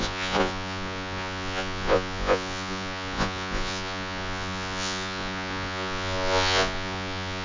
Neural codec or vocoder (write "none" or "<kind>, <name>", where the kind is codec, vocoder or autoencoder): vocoder, Vocos